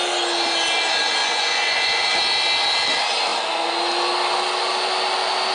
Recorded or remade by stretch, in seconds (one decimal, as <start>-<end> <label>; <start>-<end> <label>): 0.0-1.2 recorded; 1.2-2.2 remade; 2.2-5.5 recorded